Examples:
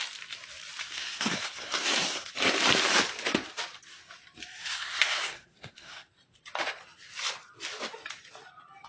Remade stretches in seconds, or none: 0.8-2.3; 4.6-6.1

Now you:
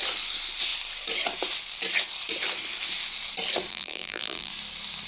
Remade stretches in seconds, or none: 3.7-4.5

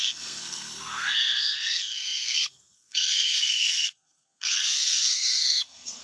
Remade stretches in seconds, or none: 0.0-6.0

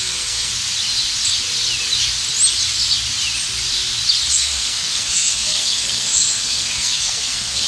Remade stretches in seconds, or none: 0.0-0.5; 4.3-7.7